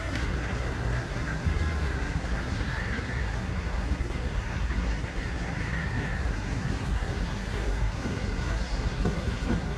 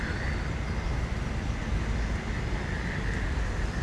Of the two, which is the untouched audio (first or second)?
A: second